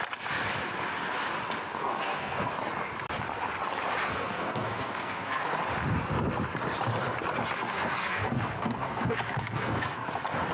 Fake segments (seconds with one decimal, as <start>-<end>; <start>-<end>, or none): 1.8-2.5; 4.0-5.4; 7.6-10.1